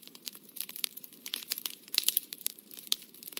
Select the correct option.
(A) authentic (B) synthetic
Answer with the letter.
B